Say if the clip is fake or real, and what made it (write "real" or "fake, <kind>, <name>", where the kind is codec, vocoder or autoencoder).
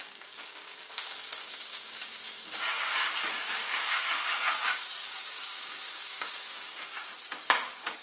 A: fake, codec, DAC